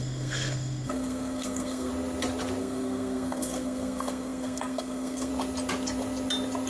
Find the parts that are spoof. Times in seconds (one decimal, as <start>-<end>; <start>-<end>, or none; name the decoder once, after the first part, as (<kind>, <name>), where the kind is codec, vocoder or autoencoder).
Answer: 0.0-1.9 (codec, SNAC); 2.6-5.3